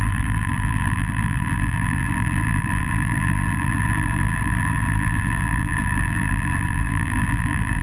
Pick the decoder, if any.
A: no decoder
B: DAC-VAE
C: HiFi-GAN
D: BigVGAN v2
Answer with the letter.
D